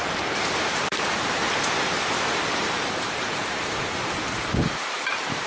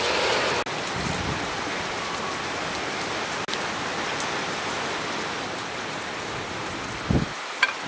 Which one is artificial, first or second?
first